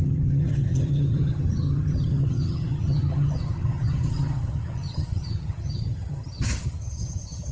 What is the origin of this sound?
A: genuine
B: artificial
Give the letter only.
B